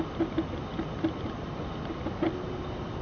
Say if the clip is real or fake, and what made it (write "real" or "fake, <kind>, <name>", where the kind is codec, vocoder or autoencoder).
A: real